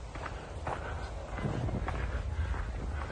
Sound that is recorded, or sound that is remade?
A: recorded